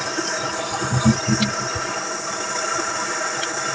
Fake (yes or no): no